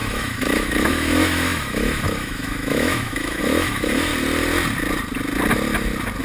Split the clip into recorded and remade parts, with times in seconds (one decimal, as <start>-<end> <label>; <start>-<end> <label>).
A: 0.0-4.1 remade; 4.1-6.2 recorded